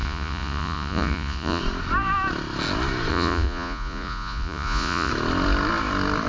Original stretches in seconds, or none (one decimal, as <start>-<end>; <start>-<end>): 1.6-3.1; 5.1-6.3